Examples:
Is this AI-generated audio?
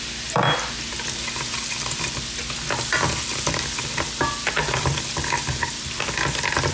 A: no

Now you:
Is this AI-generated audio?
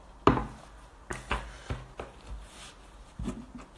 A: no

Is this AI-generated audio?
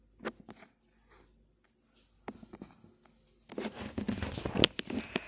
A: no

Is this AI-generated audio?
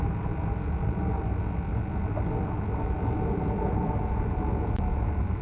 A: no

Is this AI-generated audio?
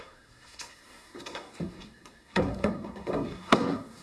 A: yes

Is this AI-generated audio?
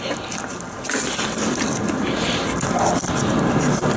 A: no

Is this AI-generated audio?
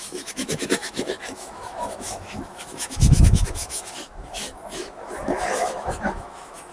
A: yes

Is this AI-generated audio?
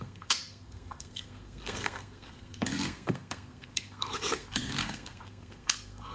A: yes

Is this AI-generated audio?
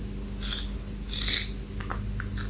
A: no